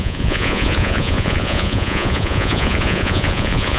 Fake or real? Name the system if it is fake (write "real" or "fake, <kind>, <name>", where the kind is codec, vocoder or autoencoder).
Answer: fake, vocoder, Vocos